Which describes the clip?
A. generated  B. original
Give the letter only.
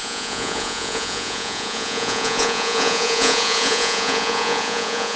A